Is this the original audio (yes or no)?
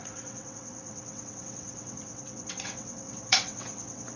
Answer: no